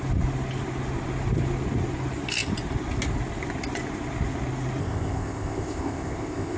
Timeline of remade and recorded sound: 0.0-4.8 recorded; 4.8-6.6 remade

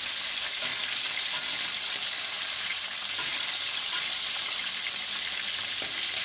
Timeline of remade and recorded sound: 0.0-6.2 recorded

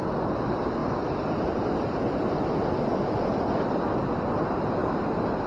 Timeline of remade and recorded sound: 0.0-5.5 recorded

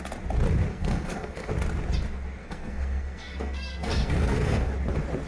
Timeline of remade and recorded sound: 0.0-0.7 recorded; 0.7-1.5 remade; 1.5-2.4 recorded; 2.4-4.7 remade; 4.7-5.3 recorded